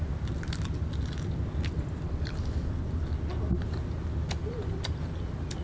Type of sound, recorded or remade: recorded